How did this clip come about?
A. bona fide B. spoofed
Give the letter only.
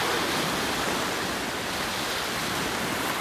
A